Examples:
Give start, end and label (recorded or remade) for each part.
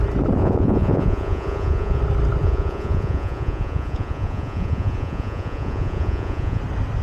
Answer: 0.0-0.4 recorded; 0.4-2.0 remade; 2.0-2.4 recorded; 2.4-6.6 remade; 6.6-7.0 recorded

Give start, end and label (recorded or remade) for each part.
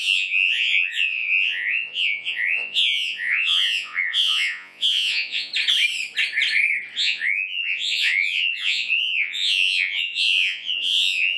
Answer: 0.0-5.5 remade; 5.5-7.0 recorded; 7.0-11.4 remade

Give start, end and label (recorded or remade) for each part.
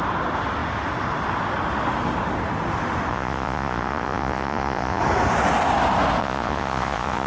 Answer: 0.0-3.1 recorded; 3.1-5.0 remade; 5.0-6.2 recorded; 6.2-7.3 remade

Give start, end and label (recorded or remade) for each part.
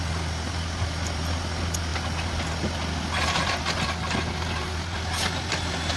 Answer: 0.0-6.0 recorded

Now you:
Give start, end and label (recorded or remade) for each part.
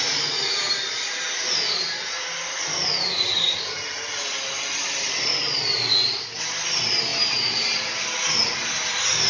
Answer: 0.0-9.3 recorded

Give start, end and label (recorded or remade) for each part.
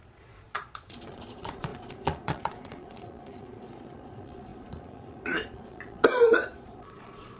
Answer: 0.0-7.4 remade